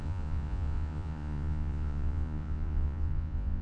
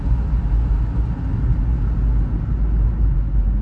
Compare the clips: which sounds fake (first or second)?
first